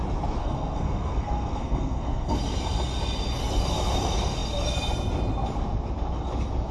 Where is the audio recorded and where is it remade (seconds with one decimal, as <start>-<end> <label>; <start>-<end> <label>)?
0.0-0.4 recorded; 0.4-2.4 remade; 2.4-6.7 recorded